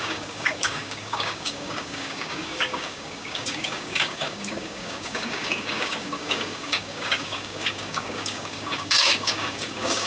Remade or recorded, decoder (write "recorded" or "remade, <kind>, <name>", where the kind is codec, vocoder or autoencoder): remade, codec, DAC